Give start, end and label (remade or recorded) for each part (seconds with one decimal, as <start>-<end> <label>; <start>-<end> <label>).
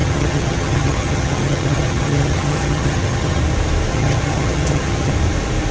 0.0-3.4 remade; 3.4-3.9 recorded; 3.9-5.1 remade; 5.1-5.7 recorded